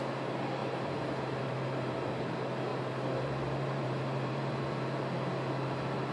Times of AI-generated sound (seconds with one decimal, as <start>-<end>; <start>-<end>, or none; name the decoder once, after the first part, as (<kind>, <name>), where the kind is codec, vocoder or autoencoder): 0.6-2.1 (vocoder, BigVGAN v2); 2.7-5.0